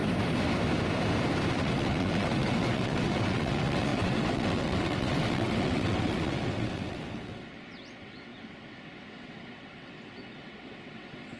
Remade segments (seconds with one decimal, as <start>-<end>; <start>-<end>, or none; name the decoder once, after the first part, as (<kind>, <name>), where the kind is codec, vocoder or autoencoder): 1.5-11.4 (vocoder, WaveNeXt)